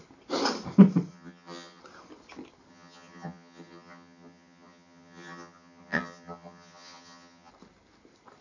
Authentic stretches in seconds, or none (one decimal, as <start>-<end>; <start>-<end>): 0.0-1.1; 1.8-2.7; 7.5-8.4